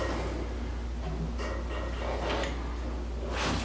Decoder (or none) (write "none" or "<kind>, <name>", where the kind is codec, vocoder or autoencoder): none